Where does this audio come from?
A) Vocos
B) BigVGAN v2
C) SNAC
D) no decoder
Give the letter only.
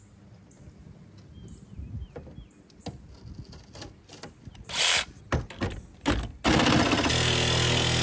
D